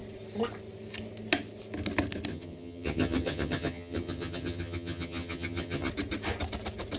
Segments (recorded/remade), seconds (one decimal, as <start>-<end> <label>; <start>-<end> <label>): 0.0-2.3 recorded; 2.3-5.9 remade; 5.9-7.0 recorded